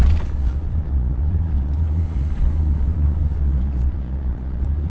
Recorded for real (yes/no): no